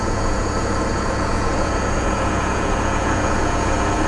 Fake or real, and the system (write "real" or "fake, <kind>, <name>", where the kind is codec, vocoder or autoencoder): fake, vocoder, Vocos